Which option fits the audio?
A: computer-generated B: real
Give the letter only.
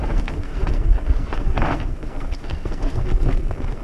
A